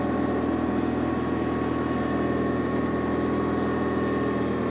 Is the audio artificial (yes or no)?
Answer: no